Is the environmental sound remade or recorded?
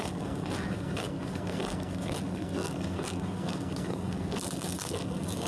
remade